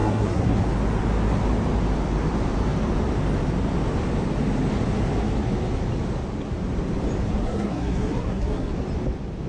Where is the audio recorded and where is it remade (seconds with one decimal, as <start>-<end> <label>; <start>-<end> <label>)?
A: 0.0-0.6 remade; 0.6-7.3 recorded; 7.3-8.7 remade; 8.7-9.5 recorded